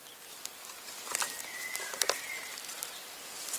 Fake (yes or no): no